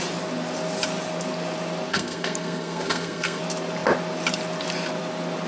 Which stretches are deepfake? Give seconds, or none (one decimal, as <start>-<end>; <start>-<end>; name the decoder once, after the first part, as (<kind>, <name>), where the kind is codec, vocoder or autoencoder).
1.9-3.4 (codec, SNAC)